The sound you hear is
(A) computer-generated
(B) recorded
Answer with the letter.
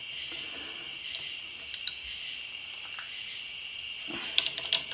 B